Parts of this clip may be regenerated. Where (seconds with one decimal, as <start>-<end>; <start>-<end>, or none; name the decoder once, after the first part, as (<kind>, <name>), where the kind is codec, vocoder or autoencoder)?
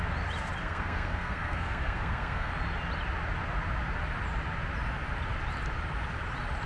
0.6-2.5 (codec, SNAC)